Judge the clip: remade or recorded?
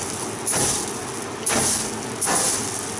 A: recorded